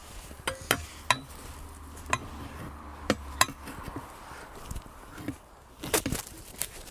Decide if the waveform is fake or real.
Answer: real